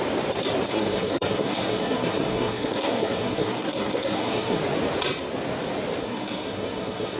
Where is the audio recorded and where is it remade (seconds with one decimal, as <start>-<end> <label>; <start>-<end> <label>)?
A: 0.0-0.7 recorded; 0.7-4.6 remade; 4.6-6.0 recorded; 6.0-7.2 remade